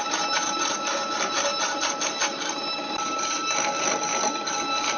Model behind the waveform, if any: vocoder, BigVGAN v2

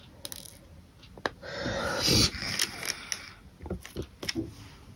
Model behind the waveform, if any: none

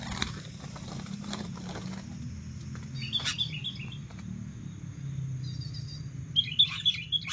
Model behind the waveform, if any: none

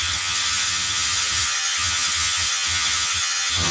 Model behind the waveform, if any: vocoder, HiFi-GAN